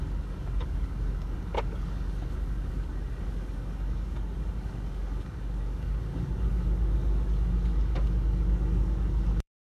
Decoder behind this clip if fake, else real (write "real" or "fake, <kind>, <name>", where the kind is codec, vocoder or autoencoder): fake, codec, DAC